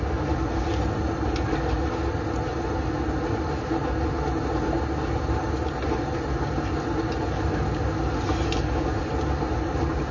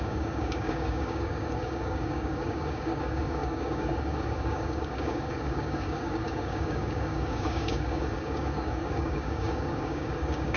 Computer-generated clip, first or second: second